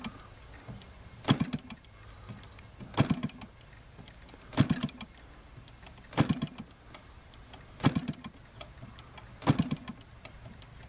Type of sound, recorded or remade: recorded